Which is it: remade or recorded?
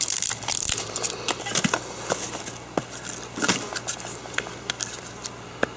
recorded